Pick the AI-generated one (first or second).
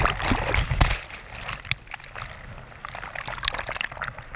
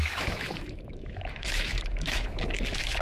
second